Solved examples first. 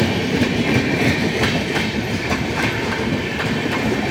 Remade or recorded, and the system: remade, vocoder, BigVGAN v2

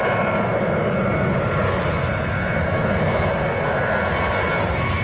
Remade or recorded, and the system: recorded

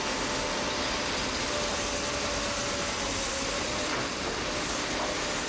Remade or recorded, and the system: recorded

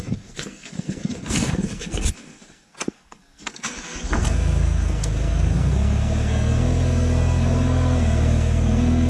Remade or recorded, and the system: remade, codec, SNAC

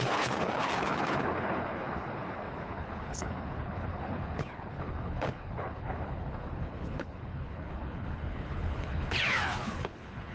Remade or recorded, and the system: remade, codec, HILCodec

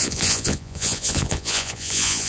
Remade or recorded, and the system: remade, vocoder, Vocos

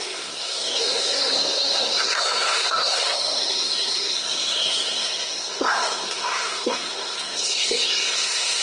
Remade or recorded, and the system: remade, codec, SNAC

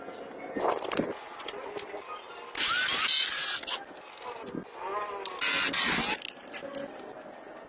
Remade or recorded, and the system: recorded